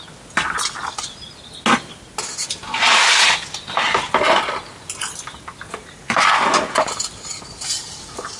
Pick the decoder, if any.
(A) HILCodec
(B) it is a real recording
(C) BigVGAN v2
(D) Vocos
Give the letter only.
B